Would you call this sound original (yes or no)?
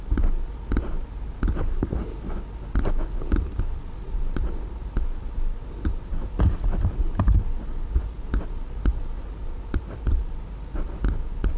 yes